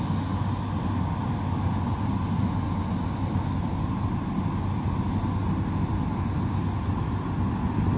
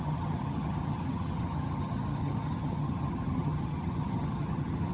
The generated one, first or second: second